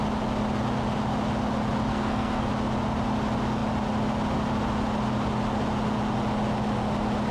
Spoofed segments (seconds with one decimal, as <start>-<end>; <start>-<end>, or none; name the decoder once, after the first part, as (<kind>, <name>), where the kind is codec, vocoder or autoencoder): 1.9-2.5 (codec, SNAC)